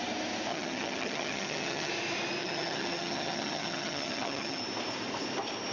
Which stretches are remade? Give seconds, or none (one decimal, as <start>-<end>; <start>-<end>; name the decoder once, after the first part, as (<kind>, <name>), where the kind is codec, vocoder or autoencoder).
0.5-1.9 (vocoder, HiFi-GAN); 2.4-4.6